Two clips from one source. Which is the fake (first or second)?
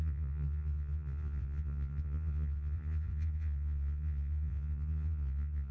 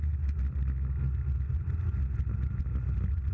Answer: first